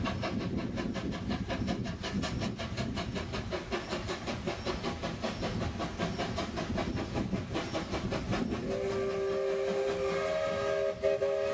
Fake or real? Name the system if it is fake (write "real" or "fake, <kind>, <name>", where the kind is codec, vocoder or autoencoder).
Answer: real